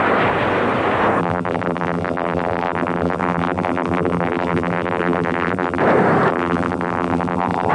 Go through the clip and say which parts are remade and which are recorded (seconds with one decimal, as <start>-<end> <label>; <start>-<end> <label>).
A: 0.0-1.2 recorded; 1.2-5.8 remade; 5.8-6.3 recorded; 6.3-7.7 remade